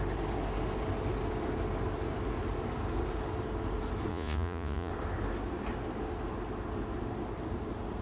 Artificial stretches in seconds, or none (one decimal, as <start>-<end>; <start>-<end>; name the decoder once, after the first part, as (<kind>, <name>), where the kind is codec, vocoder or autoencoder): 4.1-4.9 (vocoder, Vocos)